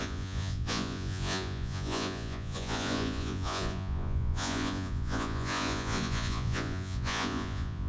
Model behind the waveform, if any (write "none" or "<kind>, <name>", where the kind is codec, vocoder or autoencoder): vocoder, Vocos